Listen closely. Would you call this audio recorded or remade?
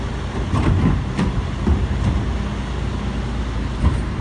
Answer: recorded